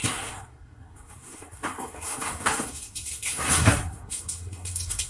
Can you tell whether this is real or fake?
fake